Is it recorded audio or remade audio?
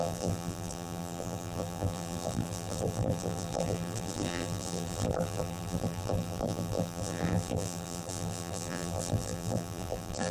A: remade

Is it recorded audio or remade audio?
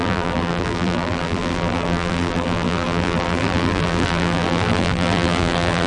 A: remade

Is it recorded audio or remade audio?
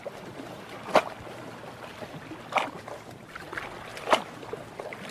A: recorded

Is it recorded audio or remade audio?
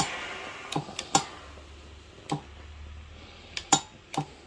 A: recorded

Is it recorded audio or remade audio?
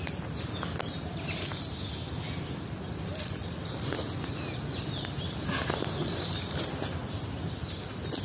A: recorded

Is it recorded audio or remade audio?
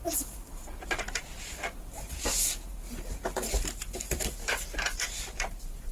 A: remade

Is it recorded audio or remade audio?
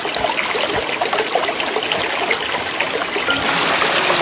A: recorded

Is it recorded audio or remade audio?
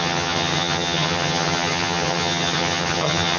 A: remade